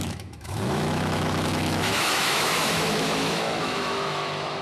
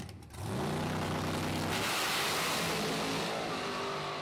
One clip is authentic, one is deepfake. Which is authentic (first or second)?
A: second